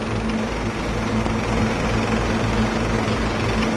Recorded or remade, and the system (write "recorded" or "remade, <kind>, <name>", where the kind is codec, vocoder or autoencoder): recorded